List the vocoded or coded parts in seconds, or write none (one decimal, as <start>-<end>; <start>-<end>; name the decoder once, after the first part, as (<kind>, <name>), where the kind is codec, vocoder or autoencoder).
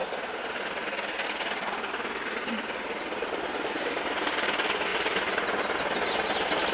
none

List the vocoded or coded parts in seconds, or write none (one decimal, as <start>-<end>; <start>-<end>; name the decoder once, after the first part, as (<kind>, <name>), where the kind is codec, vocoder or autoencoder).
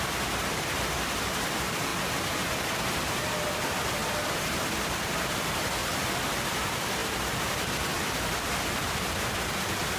0.0-1.9 (vocoder, BigVGAN v2); 2.5-4.0; 4.7-5.8; 6.3-10.0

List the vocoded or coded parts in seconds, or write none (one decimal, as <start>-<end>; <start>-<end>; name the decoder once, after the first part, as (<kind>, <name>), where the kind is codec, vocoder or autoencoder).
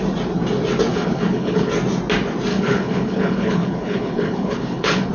0.9-1.7 (codec, HILCodec); 2.5-5.1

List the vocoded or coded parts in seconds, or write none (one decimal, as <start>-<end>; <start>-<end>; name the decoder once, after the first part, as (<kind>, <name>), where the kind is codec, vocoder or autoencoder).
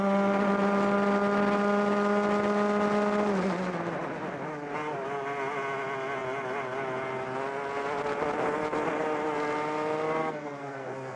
10.2-11.2 (codec, SNAC)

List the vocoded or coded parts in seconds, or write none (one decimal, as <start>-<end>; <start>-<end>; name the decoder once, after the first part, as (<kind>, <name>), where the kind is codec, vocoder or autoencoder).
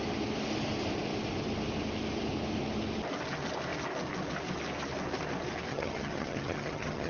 5.7-7.1 (vocoder, HiFi-GAN)